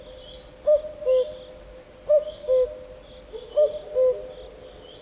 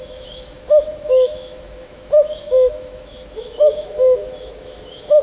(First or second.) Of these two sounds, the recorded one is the first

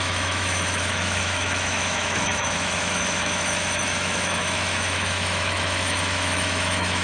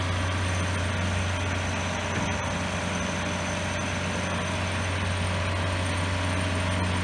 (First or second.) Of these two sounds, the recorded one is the second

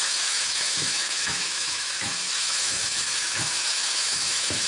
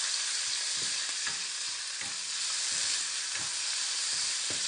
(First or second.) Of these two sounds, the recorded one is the second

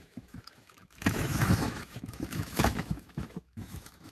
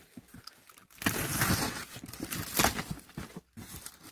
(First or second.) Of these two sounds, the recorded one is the second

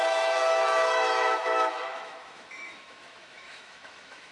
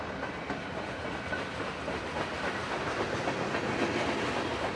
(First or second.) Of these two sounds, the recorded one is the second